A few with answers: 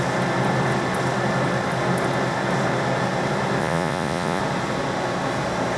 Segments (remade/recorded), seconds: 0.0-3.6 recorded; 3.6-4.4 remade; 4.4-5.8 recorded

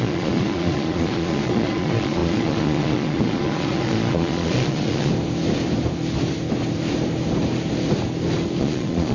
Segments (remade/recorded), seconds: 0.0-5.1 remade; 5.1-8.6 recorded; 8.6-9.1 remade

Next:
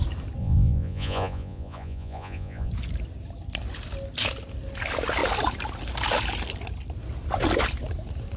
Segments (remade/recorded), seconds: 0.0-0.4 recorded; 0.4-2.7 remade; 2.7-8.4 recorded

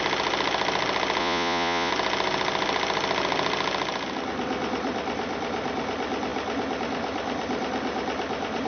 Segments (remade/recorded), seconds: 0.0-1.2 recorded; 1.2-1.9 remade; 1.9-8.7 recorded

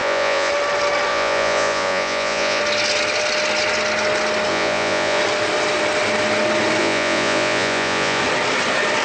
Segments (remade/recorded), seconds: 0.0-0.5 remade; 0.5-1.1 recorded; 1.1-2.6 remade; 2.6-4.5 recorded; 4.5-5.2 remade; 5.2-6.8 recorded; 6.8-8.2 remade; 8.2-9.0 recorded

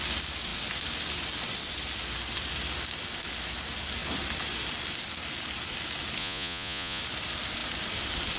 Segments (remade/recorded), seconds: 0.0-6.2 recorded; 6.2-7.0 remade; 7.0-8.4 recorded

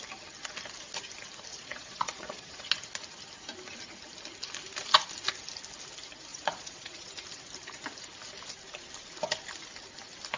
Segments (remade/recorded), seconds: 0.0-1.5 recorded; 1.5-2.7 remade; 2.7-6.3 recorded; 6.3-7.1 remade; 7.1-10.4 recorded

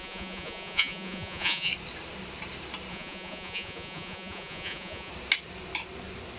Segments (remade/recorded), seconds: 0.0-1.7 remade; 1.7-2.9 recorded; 2.9-5.1 remade; 5.1-6.4 recorded